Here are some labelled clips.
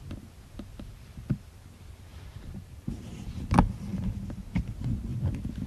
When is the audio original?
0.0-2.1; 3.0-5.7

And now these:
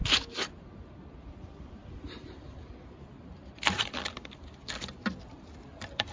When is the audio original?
0.0-0.5

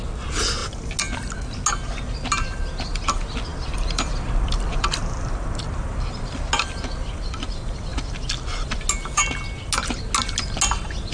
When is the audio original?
0.0-3.5; 5.6-11.1

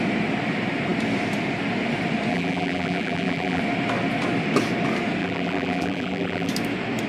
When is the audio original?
0.0-2.3; 3.6-5.2; 6.5-7.1